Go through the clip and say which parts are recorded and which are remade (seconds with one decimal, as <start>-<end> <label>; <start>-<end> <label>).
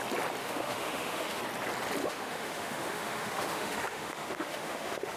0.0-0.4 recorded; 0.4-1.4 remade; 1.4-2.0 recorded; 2.0-5.2 remade